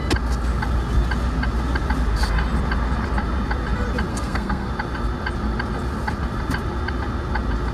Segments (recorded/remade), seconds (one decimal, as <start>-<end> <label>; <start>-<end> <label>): 0.0-4.1 recorded; 4.1-4.7 remade; 4.7-7.7 recorded